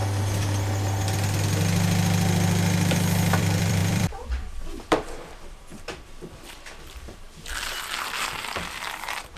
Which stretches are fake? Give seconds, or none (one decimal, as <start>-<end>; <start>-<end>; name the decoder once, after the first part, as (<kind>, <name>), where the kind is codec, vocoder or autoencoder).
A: 3.4-9.4 (vocoder, BigVGAN v2)